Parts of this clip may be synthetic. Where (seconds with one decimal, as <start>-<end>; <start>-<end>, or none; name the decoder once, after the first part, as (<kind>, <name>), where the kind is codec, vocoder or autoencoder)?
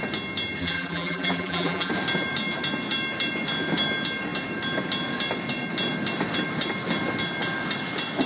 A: 0.6-1.9 (vocoder, BigVGAN v2)